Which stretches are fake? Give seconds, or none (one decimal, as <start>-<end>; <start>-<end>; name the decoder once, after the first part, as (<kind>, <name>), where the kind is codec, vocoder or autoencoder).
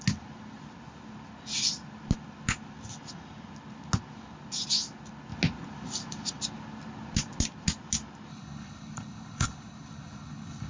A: 8.3-10.7 (codec, HILCodec)